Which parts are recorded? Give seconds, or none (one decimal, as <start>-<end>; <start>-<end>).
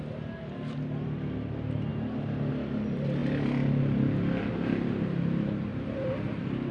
0.0-5.7